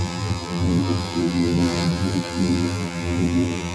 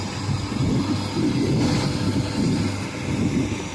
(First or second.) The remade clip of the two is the first